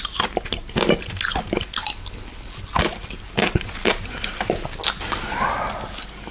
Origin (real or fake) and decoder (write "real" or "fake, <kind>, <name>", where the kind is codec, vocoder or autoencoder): real